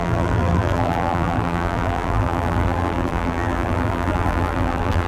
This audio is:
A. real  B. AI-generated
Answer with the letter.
B